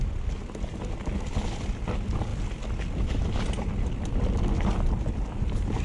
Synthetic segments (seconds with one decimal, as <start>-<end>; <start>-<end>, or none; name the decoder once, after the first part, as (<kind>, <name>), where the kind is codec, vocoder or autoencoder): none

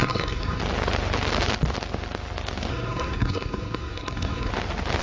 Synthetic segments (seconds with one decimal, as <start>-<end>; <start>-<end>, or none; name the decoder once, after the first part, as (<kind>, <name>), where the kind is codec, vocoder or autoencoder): 0.0-0.6 (codec, SNAC); 2.7-4.5

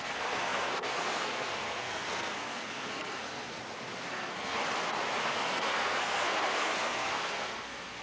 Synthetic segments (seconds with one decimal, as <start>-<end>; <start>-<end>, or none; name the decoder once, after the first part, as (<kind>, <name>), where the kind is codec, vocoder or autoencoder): 0.0-3.6 (codec, SNAC); 4.1-4.6; 5.2-8.0

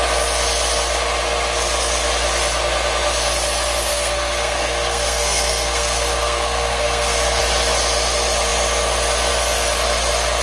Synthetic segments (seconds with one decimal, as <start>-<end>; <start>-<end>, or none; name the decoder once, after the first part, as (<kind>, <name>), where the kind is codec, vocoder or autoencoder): 3.9-7.4 (codec, SNAC)

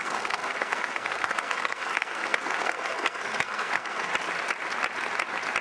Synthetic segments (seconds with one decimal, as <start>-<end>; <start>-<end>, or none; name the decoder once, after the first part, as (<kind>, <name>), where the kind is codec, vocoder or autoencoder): 0.0-4.1 (codec, SNAC)

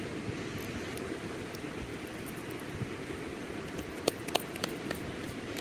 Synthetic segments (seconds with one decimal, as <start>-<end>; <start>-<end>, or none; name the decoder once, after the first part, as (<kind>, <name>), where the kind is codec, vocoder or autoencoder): none

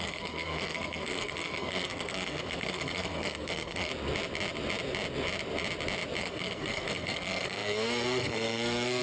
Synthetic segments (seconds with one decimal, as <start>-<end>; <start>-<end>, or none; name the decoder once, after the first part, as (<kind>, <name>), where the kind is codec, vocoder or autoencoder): 0.0-3.9 (codec, SNAC); 6.2-9.0